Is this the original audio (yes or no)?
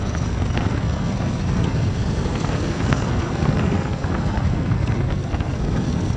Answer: no